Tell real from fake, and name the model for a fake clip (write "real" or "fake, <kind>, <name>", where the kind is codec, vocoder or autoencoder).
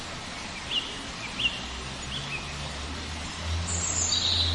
real